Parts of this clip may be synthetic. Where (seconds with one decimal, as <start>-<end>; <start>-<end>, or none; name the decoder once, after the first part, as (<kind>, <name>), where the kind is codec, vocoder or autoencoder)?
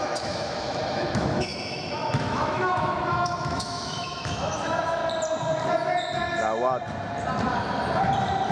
0.0-5.0 (autoencoder, DAC-VAE)